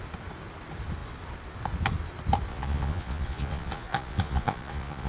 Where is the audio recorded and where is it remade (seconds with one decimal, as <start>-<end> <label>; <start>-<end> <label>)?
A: 0.0-2.5 recorded; 2.5-5.1 remade